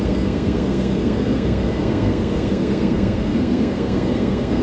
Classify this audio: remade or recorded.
remade